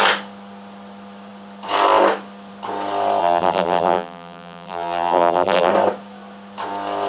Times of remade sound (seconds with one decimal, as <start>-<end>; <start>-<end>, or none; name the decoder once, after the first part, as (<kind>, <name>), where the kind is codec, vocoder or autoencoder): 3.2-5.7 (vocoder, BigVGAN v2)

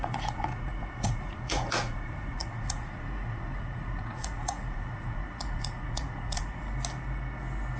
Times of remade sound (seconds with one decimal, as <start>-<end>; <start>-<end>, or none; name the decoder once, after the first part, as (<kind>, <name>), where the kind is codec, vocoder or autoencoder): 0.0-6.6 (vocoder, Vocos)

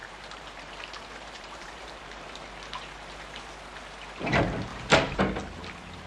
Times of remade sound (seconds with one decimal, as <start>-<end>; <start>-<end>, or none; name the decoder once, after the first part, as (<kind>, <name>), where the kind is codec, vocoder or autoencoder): 0.0-3.4 (vocoder, BigVGAN v2); 4.7-5.2

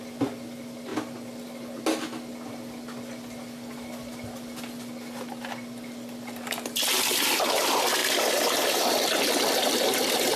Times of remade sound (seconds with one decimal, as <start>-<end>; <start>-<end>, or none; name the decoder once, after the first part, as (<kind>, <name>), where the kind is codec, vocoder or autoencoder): 8.0-8.9 (vocoder, BigVGAN v2)

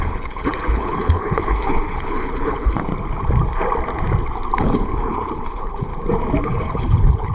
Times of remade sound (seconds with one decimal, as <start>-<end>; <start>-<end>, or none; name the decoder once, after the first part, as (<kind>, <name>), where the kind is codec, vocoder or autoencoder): 0.0-2.9 (codec, HILCodec); 4.6-5.9; 6.4-7.3

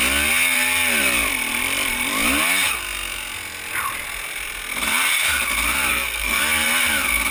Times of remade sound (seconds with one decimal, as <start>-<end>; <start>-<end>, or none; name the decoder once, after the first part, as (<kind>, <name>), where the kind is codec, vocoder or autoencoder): 5.9-6.4 (codec, SNAC)

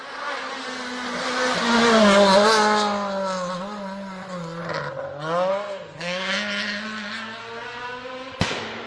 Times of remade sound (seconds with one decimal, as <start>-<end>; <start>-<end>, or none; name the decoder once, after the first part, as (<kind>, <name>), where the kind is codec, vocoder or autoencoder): 5.5-6.3 (codec, SNAC)

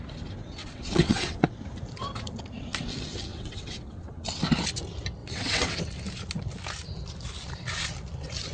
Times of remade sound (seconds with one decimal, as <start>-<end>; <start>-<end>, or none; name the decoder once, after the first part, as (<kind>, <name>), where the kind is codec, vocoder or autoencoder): 0.6-1.5 (vocoder, WaveNeXt); 3.3-4.2; 5.2-5.8